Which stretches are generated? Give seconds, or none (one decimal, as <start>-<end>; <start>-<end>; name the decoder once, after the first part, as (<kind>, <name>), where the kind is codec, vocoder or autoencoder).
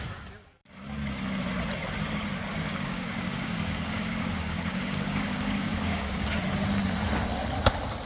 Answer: 2.5-6.3 (codec, DAC)